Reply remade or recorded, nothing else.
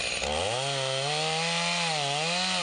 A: recorded